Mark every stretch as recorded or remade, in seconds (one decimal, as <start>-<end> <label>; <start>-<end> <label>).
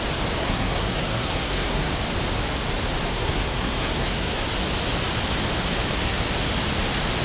0.0-0.4 recorded; 0.4-1.9 remade; 1.9-3.1 recorded; 3.1-4.4 remade; 4.4-7.2 recorded